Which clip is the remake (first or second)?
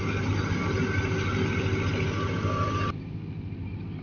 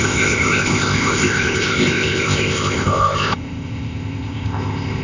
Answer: second